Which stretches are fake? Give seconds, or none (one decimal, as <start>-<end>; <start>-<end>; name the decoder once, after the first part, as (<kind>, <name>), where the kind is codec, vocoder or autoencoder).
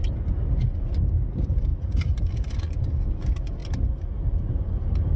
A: none